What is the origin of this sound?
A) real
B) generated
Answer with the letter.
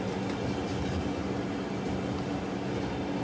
A